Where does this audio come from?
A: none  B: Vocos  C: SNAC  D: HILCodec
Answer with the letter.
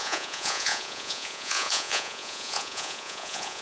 B